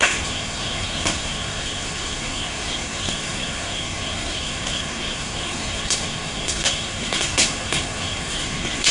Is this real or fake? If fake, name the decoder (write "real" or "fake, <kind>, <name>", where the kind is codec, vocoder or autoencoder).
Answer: fake, codec, SNAC